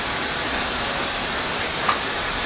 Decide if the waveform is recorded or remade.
recorded